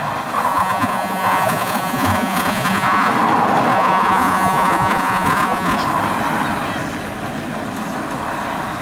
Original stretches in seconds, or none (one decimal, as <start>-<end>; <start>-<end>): 0.0-0.5; 3.1-3.7; 5.8-8.8